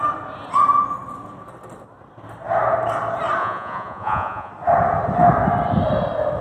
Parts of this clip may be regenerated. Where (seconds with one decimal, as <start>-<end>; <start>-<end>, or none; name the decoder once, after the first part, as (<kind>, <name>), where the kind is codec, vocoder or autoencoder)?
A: 3.4-4.5 (vocoder, Vocos)